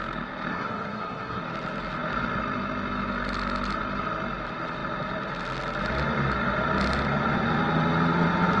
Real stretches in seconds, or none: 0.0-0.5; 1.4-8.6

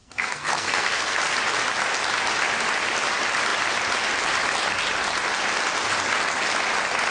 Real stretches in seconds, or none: 1.2-7.1

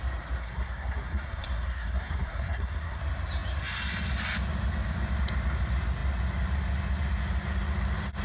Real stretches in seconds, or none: 0.0-0.4; 3.0-8.2

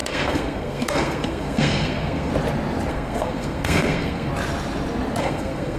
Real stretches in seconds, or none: 2.3-2.9; 4.3-5.2

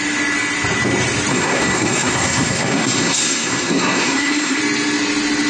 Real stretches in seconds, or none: 0.0-1.3; 4.6-5.5

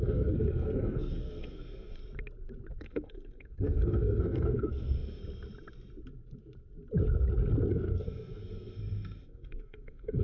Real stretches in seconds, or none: 2.0-2.8; 5.2-7.7

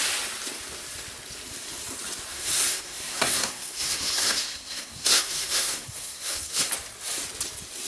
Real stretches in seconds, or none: 0.0-2.3; 6.7-7.9

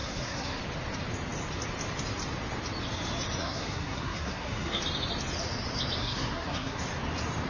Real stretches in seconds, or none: 0.6-3.4; 4.8-6.0; 6.8-7.5